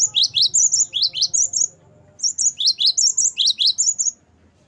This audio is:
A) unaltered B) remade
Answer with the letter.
A